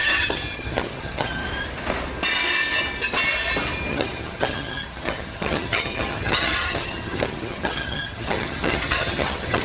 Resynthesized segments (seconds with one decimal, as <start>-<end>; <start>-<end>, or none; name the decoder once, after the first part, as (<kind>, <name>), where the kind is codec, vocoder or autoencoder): 0.0-1.4 (vocoder, HiFi-GAN); 3.9-9.6